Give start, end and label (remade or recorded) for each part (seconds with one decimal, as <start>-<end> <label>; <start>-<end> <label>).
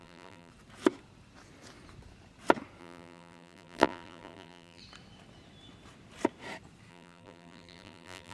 0.0-0.5 remade; 0.5-2.8 recorded; 2.8-4.8 remade; 4.8-6.9 recorded; 6.9-8.3 remade